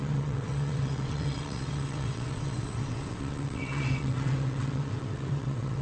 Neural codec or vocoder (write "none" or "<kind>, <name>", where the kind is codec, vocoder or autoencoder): vocoder, WaveNeXt